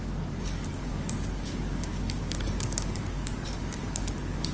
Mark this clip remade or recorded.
remade